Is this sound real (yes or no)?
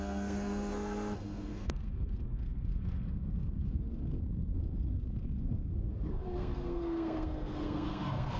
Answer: no